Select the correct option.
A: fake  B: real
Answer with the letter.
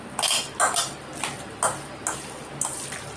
B